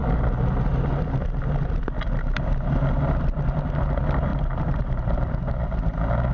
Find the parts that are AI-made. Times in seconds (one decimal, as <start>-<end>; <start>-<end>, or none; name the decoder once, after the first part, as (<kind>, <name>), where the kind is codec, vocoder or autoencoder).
4.3-5.3 (vocoder, BigVGAN v2)